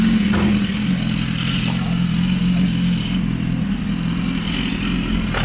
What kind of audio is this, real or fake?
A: real